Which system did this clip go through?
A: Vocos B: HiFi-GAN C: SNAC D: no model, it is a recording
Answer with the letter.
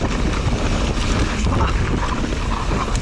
D